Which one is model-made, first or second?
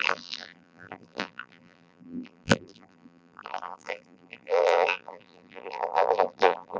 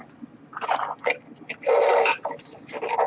first